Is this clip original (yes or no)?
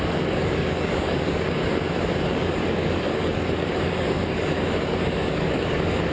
no